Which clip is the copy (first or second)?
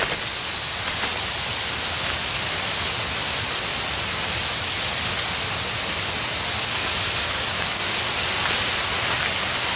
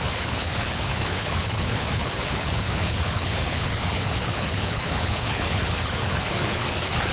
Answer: second